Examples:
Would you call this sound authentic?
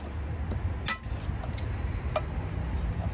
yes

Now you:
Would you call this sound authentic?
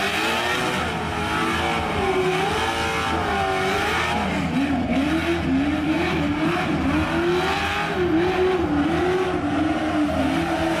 yes